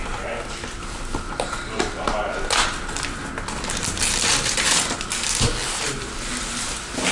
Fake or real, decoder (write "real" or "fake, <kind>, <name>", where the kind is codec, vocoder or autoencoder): real